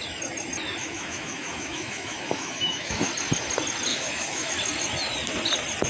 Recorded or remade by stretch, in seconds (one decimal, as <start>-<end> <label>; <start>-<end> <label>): 0.0-0.8 recorded; 0.8-3.1 remade; 3.1-3.9 recorded; 3.9-4.5 remade; 4.5-5.9 recorded

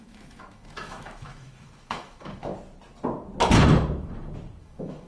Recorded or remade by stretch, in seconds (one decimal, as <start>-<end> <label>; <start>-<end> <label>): 0.0-2.5 remade; 2.5-4.6 recorded; 4.6-5.1 remade